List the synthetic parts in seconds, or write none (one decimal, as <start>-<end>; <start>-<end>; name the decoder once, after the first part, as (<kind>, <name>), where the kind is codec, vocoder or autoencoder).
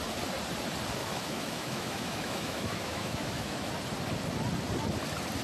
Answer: 1.0-3.7 (autoencoder, DAC-VAE)